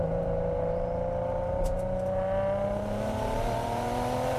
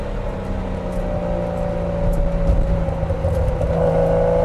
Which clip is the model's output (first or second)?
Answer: first